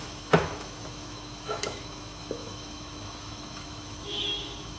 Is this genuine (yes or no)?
no